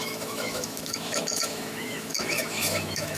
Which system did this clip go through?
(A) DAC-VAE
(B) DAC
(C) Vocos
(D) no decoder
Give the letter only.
A